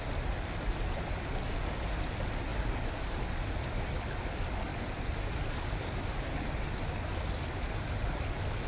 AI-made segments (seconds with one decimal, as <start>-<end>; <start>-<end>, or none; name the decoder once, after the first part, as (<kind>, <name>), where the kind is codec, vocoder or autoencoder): none